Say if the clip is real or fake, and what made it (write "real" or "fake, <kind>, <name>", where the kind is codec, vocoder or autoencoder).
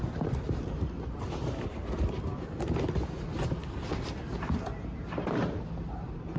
real